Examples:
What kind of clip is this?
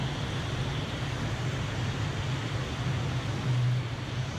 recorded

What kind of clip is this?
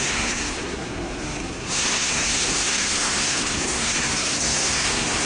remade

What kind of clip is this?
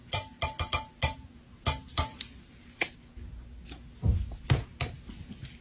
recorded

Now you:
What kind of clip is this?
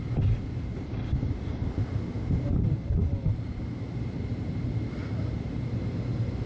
recorded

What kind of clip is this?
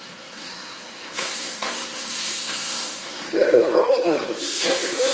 remade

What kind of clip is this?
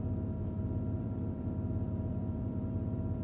remade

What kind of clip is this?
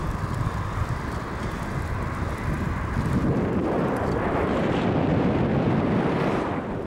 recorded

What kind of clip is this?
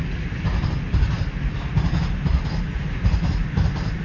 recorded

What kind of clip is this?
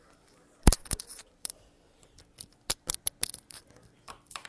recorded